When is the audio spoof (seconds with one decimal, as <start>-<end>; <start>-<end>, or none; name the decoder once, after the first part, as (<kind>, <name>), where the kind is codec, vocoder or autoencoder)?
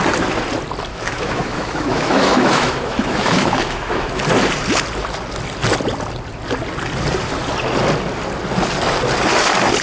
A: 0.9-4.2 (autoencoder, DAC-VAE)